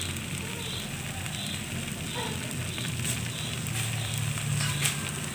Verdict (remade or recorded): recorded